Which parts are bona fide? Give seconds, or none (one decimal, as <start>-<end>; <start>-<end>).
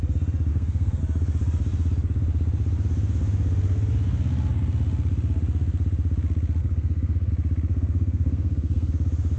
0.0-0.5; 1.0-6.6; 7.3-7.7; 8.9-9.4